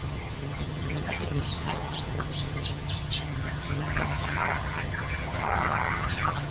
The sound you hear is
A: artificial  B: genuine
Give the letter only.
A